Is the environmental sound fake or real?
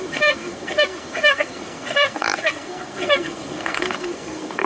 fake